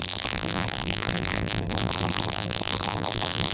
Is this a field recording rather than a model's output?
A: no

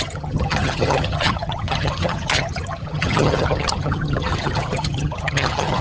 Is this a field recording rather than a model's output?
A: no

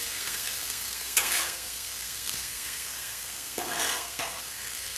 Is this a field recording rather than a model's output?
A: no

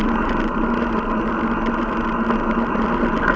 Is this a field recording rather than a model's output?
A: yes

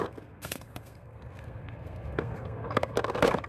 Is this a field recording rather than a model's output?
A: no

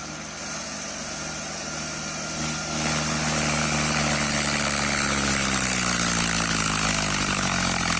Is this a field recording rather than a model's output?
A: yes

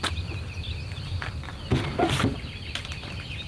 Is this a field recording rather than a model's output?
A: yes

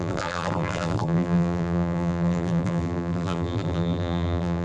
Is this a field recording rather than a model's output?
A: no